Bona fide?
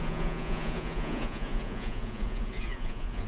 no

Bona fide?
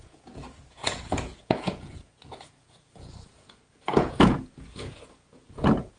no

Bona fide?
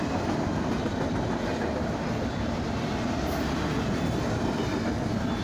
yes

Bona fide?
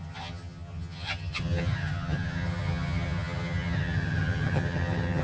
no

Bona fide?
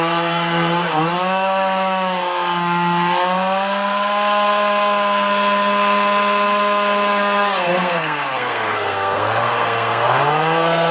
no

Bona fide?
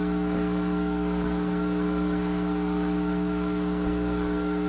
no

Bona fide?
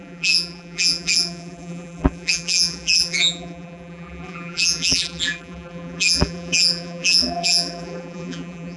no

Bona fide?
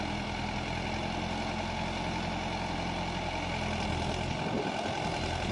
yes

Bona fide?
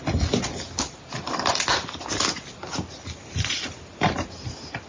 yes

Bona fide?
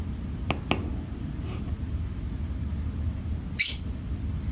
yes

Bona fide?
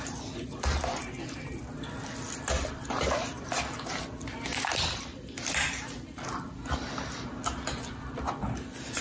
yes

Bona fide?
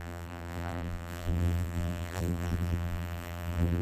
no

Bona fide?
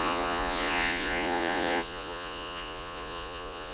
no